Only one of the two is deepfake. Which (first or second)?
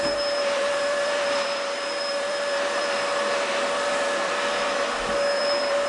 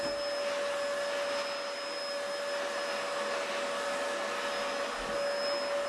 first